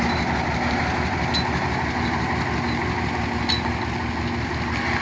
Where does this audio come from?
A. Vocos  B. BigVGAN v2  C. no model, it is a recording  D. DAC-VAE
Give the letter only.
C